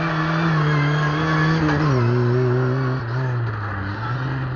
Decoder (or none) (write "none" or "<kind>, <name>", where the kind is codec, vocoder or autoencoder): none